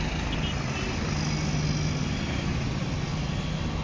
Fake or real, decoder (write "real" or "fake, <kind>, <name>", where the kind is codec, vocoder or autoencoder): real